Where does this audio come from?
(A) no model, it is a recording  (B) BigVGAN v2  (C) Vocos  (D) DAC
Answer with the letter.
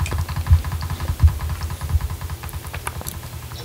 A